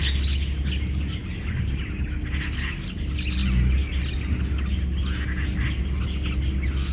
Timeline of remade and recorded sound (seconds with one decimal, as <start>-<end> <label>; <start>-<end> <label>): 0.0-1.2 recorded; 1.2-1.8 remade; 1.8-6.9 recorded